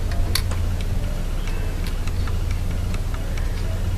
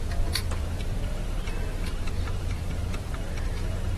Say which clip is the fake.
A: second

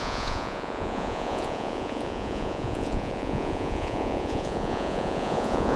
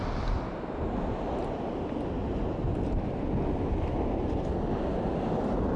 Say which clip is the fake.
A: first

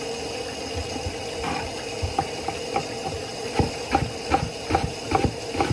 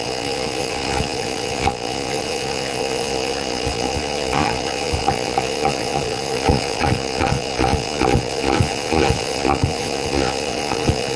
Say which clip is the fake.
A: second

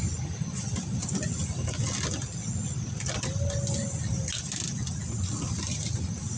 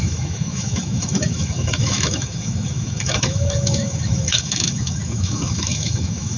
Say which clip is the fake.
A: second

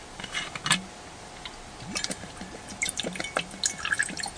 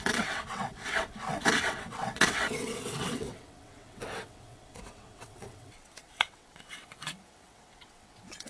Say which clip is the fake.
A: second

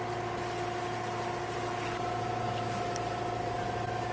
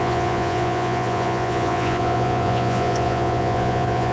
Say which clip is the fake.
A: second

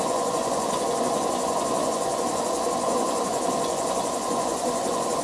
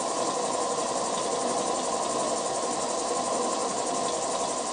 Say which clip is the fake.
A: first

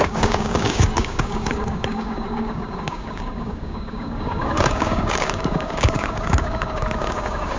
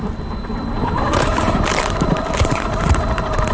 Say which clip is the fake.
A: first